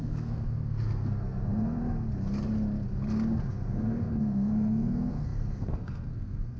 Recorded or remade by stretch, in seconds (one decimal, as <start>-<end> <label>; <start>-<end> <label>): 0.0-1.8 remade; 1.8-3.5 recorded; 3.5-6.6 remade